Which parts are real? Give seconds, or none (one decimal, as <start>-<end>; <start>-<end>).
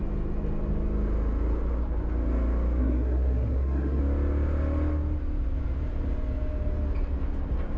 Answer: 0.0-2.8; 4.0-7.8